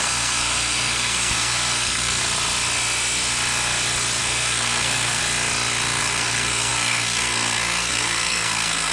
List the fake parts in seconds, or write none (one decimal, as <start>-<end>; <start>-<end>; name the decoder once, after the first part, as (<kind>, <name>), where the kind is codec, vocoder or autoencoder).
0.0-2.2 (codec, SNAC); 4.2-5.2; 6.0-8.9

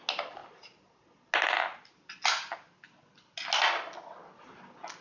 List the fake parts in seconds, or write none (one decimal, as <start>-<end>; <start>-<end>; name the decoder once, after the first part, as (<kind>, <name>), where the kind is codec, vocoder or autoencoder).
none

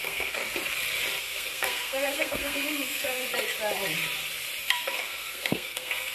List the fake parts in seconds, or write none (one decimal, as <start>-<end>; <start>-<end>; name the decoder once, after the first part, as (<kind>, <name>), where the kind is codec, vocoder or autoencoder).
0.0-0.4 (codec, SNAC); 1.2-3.2; 4.6-6.1

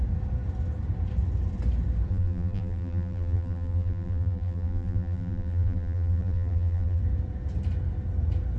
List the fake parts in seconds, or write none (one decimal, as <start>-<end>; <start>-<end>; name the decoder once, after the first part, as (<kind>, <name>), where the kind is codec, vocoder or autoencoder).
2.1-7.0 (vocoder, BigVGAN v2)